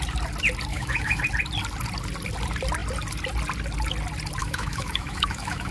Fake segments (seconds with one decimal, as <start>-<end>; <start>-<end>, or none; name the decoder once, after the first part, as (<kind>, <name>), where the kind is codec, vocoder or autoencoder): 0.7-1.2 (autoencoder, DAC-VAE); 4.4-5.7